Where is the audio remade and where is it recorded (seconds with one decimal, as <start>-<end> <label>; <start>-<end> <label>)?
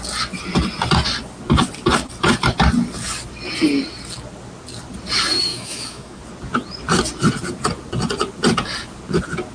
0.0-5.5 recorded; 5.5-6.2 remade; 6.2-9.5 recorded